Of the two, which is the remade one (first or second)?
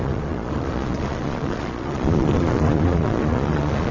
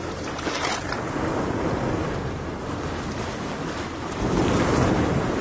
first